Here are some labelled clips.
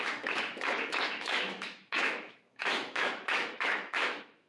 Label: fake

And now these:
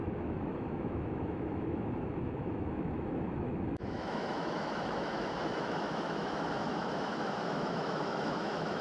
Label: fake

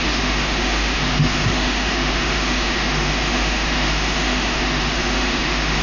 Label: fake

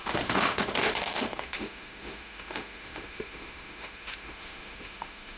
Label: fake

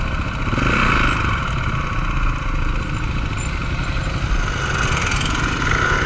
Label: real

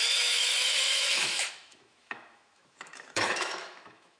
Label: fake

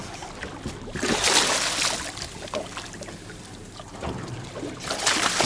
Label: real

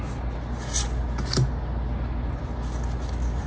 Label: real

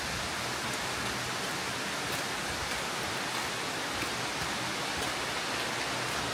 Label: real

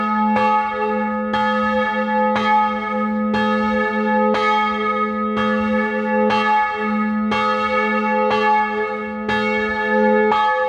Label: real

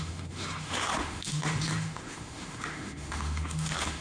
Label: fake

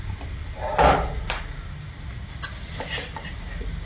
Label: real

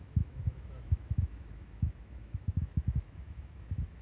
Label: fake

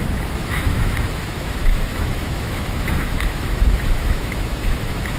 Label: fake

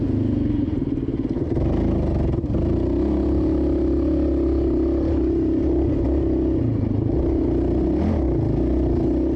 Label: real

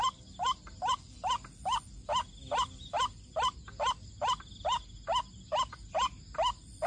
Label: real